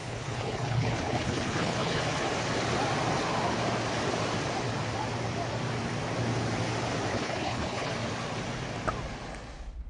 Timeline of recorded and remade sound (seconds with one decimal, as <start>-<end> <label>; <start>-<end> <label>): 0.0-2.0 remade; 2.0-7.1 recorded; 7.1-7.9 remade; 7.9-9.9 recorded